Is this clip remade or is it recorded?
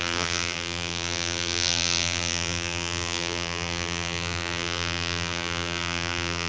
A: remade